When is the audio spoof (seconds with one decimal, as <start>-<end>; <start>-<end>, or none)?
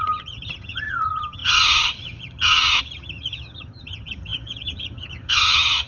0.0-5.9